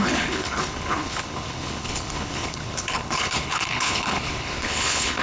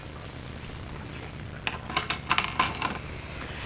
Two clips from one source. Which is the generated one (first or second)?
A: first